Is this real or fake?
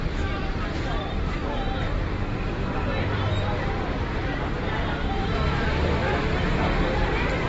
fake